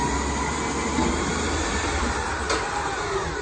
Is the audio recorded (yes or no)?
yes